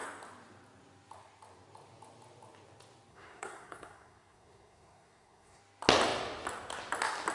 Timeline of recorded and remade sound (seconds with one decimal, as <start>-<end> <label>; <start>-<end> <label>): 0.0-3.1 recorded; 3.1-5.6 remade; 5.6-7.3 recorded